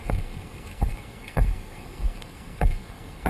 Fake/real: fake